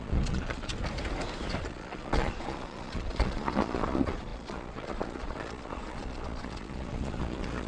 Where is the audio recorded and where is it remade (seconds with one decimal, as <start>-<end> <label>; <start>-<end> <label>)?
0.0-0.7 remade; 0.7-1.6 recorded; 1.6-7.7 remade